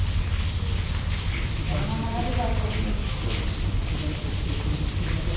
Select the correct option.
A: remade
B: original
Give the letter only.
B